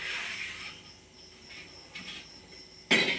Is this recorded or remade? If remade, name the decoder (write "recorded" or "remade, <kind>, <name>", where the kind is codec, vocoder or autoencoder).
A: recorded